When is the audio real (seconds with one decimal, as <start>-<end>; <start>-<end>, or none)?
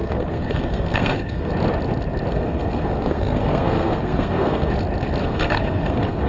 1.5-2.3; 4.7-5.2